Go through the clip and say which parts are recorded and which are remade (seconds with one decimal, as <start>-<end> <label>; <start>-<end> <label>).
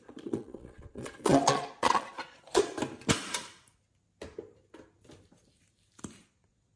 0.0-2.7 remade; 2.7-6.2 recorded; 6.2-6.8 remade